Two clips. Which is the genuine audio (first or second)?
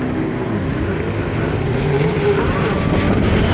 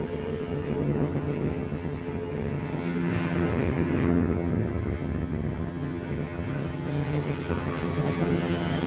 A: first